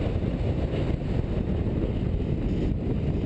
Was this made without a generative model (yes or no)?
yes